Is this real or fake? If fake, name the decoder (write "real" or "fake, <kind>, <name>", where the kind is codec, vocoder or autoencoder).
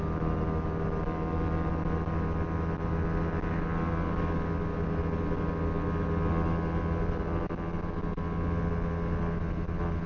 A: real